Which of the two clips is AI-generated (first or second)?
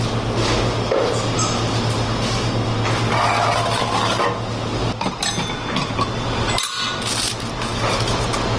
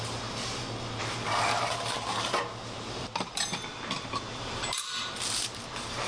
second